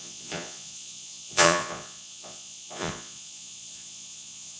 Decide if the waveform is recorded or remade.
remade